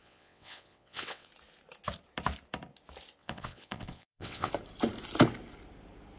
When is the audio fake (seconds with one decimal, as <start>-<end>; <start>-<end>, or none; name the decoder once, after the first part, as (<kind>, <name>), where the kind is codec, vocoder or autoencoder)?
0.0-1.3 (vocoder, WaveNeXt); 3.2-4.5